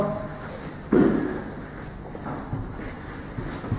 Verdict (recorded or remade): recorded